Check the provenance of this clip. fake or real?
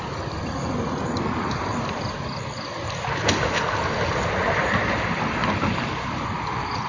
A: real